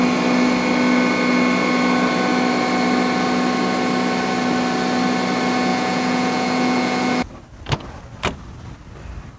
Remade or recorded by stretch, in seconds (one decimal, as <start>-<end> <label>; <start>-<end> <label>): 0.0-5.7 recorded; 5.7-7.3 remade; 7.3-9.4 recorded